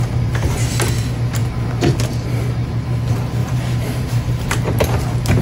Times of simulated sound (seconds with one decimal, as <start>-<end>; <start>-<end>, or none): 3.4-5.0